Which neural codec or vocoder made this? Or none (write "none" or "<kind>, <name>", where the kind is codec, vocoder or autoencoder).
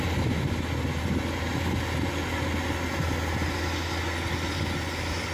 none